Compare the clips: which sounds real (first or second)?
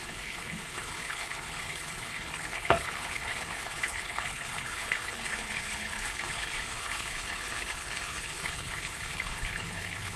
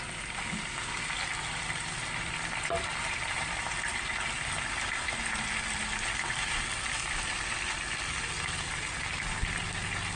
second